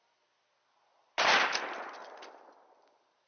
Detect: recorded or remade recorded